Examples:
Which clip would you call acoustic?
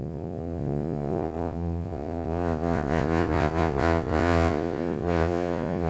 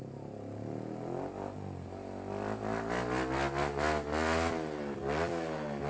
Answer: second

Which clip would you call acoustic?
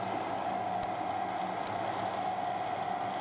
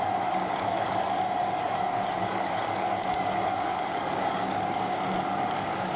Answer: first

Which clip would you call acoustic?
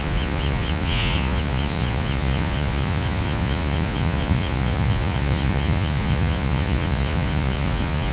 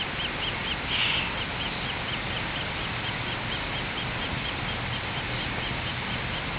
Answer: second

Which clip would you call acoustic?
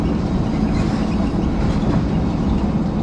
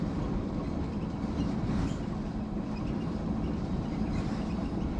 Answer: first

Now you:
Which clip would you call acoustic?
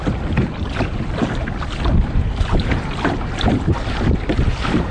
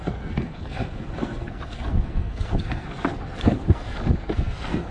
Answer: first